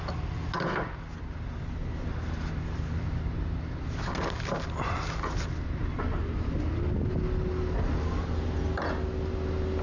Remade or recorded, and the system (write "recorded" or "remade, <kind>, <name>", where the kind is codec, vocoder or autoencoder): recorded